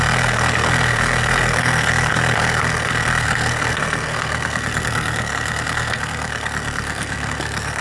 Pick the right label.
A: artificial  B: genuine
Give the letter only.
A